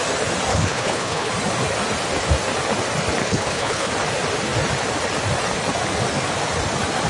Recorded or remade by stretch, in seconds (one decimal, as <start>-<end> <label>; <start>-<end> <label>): 0.0-0.5 recorded; 0.5-1.3 remade; 1.3-3.2 recorded; 3.2-3.9 remade; 3.9-7.1 recorded

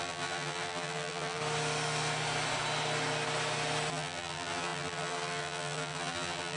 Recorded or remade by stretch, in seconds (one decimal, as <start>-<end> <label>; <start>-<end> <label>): 0.0-1.4 remade; 1.4-3.9 recorded; 3.9-6.6 remade

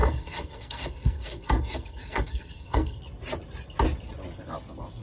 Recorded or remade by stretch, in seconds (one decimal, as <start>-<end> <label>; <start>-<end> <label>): 0.0-3.0 remade; 3.0-5.0 recorded

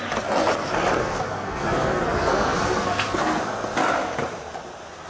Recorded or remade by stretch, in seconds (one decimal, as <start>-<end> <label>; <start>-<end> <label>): 0.0-1.0 recorded; 1.0-3.4 remade; 3.4-5.1 recorded

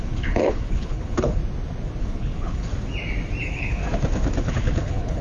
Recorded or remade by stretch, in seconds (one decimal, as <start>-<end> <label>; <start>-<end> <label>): 0.0-1.4 remade; 1.4-2.0 recorded; 2.0-2.7 remade; 2.7-3.4 recorded; 3.4-3.8 remade; 3.8-4.5 recorded; 4.5-5.2 remade